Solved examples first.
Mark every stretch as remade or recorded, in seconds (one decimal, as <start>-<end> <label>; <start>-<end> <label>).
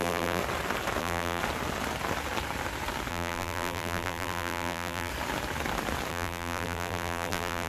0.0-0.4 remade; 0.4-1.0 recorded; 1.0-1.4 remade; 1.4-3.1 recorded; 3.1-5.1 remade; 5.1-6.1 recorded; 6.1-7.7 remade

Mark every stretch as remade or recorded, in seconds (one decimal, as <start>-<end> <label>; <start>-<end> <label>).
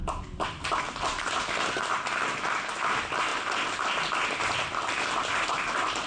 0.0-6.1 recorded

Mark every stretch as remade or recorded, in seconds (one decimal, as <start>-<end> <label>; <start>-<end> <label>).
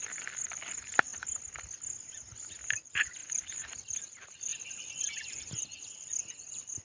0.0-1.1 remade; 1.1-2.6 recorded; 2.6-6.8 remade